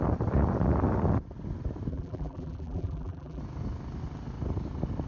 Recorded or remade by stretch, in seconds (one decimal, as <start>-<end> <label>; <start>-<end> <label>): 0.0-1.9 recorded; 1.9-3.4 remade; 3.4-5.1 recorded